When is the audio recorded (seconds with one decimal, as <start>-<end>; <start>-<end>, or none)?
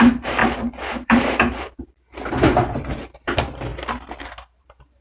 3.7-4.2